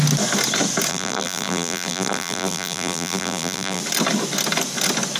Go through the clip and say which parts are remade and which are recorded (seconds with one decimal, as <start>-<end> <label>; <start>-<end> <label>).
0.0-0.9 recorded; 0.9-3.8 remade; 3.8-5.2 recorded